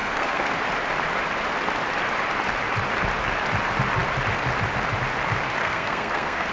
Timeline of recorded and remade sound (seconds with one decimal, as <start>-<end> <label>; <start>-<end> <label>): 0.0-0.6 remade; 0.6-5.6 recorded; 5.6-6.5 remade